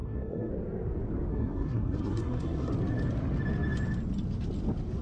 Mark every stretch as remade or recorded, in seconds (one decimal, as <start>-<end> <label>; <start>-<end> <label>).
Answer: 0.0-0.5 remade; 0.5-1.3 recorded; 1.3-2.7 remade; 2.7-5.0 recorded

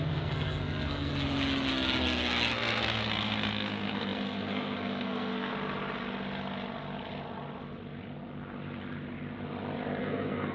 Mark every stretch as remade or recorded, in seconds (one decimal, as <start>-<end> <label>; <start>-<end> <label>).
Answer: 0.0-1.1 remade; 1.1-1.7 recorded; 1.7-5.5 remade; 5.5-10.0 recorded; 10.0-10.5 remade

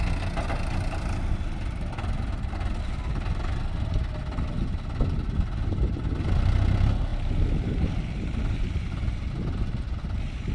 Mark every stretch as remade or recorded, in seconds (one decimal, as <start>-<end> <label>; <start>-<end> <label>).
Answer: 0.0-10.5 recorded

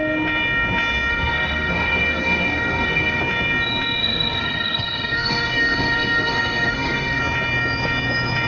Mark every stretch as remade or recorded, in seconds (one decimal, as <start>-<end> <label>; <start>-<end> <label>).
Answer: 0.0-1.1 recorded; 1.1-3.2 remade; 3.2-4.0 recorded; 4.0-7.2 remade; 7.2-8.5 recorded

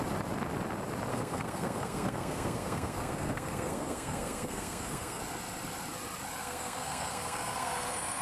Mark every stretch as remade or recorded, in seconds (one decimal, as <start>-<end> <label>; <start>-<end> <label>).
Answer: 0.0-1.1 recorded; 1.1-5.2 remade; 5.2-6.4 recorded; 6.4-8.2 remade

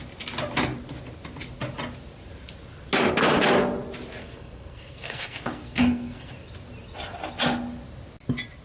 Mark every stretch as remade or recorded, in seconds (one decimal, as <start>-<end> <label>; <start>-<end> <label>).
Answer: 0.0-4.2 recorded; 4.2-6.3 remade; 6.3-8.6 recorded

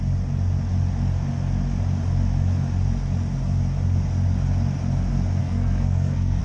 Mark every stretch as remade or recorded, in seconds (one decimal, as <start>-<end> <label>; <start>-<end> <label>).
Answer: 0.0-5.4 recorded; 5.4-6.4 remade